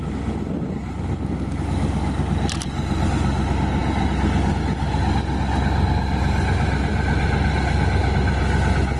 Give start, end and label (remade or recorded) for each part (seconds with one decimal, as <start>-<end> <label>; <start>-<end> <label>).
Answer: 0.0-9.0 recorded